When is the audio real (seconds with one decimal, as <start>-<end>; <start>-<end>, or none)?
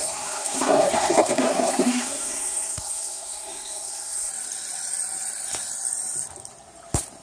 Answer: 4.3-7.2